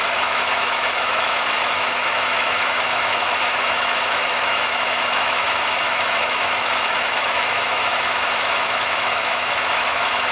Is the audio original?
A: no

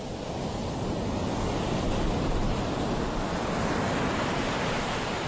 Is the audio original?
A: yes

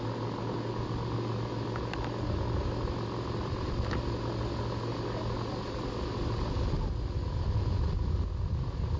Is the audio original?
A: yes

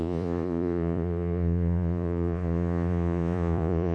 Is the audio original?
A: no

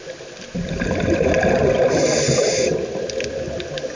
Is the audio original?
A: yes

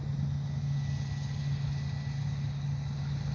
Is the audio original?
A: yes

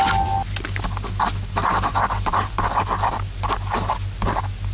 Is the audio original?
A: yes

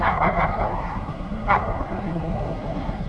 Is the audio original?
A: no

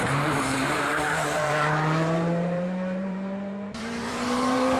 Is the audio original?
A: no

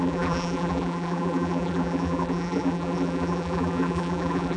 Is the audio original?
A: no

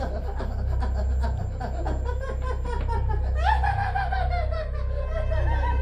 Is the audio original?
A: yes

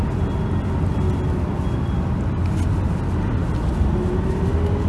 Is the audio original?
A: yes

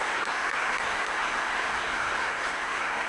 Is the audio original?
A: no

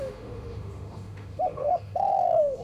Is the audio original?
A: no